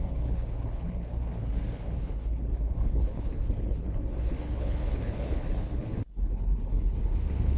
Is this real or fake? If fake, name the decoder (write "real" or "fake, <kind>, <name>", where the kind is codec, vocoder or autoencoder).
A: fake, codec, HILCodec